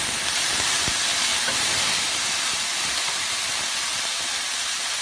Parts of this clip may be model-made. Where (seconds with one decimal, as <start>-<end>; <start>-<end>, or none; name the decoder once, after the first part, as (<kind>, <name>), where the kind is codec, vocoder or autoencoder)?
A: 1.3-3.4 (vocoder, BigVGAN v2)